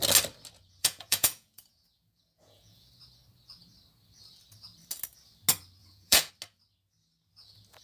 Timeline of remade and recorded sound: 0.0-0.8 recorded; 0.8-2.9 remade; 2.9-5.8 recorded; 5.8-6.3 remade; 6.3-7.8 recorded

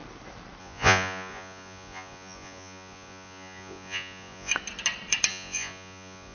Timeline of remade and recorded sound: 0.0-0.6 recorded; 0.6-4.5 remade; 4.5-5.3 recorded; 5.3-6.3 remade

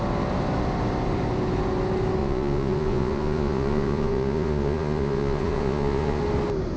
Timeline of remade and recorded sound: 0.0-2.2 recorded; 2.2-6.2 remade; 6.2-6.8 recorded

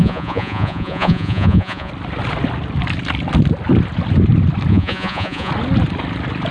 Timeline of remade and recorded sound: 0.0-1.9 remade; 1.9-4.7 recorded; 4.7-5.5 remade; 5.5-6.5 recorded

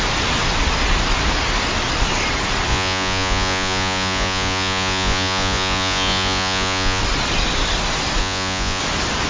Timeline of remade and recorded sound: 0.0-2.7 recorded; 2.7-7.0 remade; 7.0-8.2 recorded; 8.2-8.8 remade; 8.8-9.3 recorded

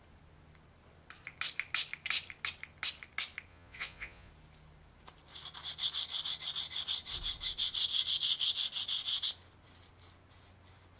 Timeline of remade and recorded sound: 0.0-3.5 recorded; 3.5-4.3 remade; 4.3-11.0 recorded

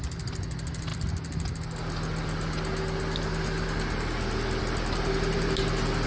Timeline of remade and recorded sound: 0.0-6.1 recorded